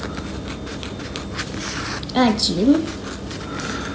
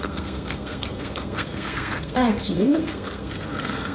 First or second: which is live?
first